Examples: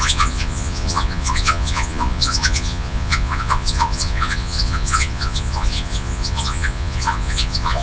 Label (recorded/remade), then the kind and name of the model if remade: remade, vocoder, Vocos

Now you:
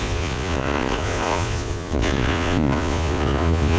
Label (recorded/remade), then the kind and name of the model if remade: remade, vocoder, Vocos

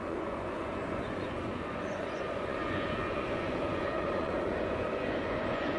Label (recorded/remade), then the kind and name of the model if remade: remade, vocoder, Vocos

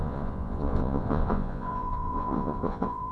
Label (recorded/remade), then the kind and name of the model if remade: remade, vocoder, Vocos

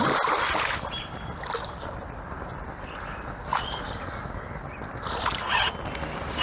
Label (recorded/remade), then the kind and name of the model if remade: recorded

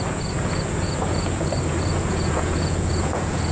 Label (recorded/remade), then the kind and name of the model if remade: remade, vocoder, Vocos